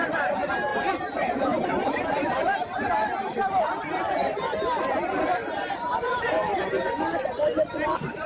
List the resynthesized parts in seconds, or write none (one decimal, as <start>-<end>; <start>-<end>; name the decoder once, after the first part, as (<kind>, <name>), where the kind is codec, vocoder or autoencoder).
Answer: 0.7-1.7 (vocoder, BigVGAN v2); 5.4-6.6; 7.4-8.3